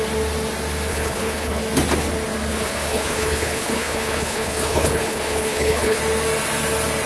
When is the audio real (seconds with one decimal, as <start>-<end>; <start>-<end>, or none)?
0.0-0.9; 1.6-2.5; 6.0-7.1